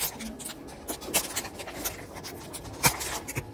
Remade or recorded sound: recorded